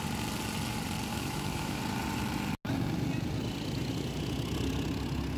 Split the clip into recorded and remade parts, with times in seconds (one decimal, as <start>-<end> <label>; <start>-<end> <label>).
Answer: 0.0-1.1 recorded; 1.1-1.8 remade; 1.8-5.4 recorded